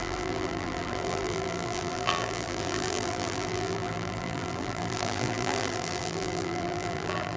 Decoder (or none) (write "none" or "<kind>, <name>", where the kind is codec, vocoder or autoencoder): vocoder, BigVGAN v2